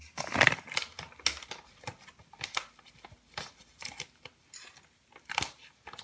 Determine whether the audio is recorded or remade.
recorded